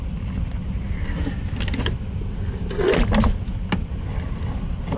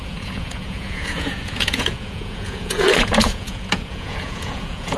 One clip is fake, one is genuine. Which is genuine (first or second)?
first